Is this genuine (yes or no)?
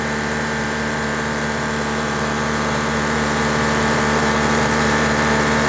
no